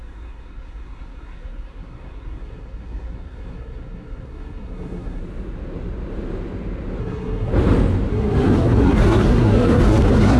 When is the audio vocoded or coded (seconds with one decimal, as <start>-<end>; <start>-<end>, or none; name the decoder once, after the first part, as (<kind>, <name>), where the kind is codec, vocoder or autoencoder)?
0.0-5.2 (codec, SNAC); 7.0-7.5; 8.1-10.4